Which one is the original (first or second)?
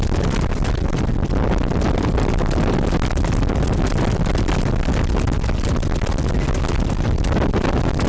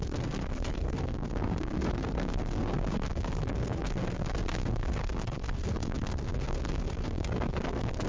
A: first